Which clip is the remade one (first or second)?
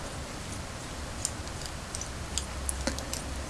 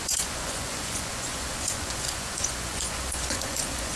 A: second